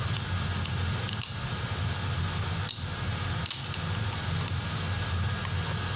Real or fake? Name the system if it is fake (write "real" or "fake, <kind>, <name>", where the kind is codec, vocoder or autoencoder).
real